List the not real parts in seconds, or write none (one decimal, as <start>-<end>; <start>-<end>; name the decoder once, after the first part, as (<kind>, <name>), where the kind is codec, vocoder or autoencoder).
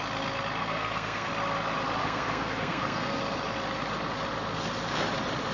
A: 0.6-1.3 (codec, SNAC); 2.0-3.2